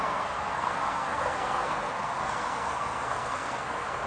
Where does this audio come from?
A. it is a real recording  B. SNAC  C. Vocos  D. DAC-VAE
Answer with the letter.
B